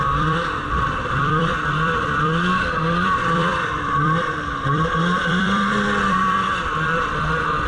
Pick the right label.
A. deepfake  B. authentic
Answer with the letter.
A